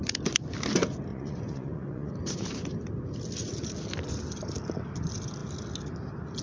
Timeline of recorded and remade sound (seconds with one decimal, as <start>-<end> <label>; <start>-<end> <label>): 0.0-1.1 recorded; 1.1-2.1 remade; 2.1-6.4 recorded